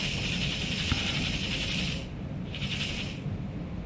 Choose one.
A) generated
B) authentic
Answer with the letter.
B